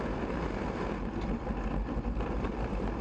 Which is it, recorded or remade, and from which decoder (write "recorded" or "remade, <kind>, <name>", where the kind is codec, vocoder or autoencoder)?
recorded